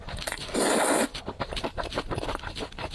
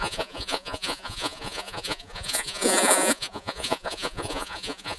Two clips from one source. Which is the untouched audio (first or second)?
first